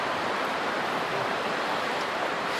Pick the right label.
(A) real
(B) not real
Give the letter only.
B